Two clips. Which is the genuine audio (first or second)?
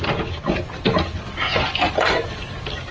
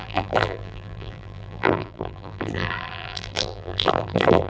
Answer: first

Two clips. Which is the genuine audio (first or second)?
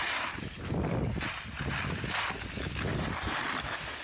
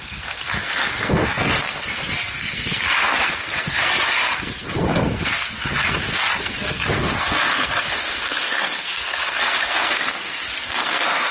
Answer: first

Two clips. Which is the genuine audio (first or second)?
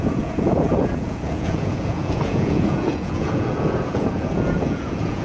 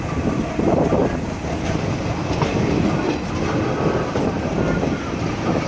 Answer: second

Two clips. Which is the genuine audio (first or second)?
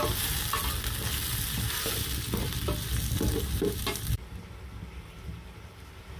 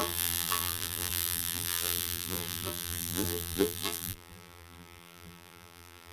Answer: first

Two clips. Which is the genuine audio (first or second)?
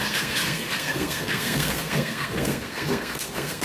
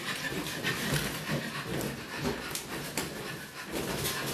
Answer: second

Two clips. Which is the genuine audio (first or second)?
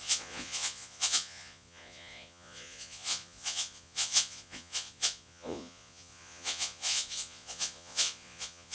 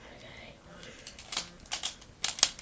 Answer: second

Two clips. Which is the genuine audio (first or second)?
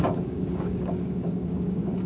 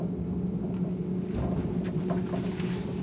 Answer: second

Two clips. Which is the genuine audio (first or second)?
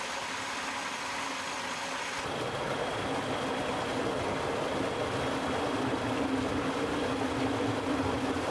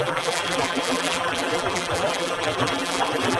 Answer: first